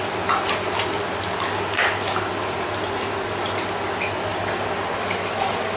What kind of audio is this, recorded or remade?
recorded